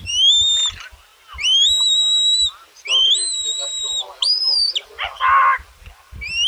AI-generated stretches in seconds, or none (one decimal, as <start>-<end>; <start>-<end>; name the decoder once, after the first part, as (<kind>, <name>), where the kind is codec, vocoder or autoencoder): none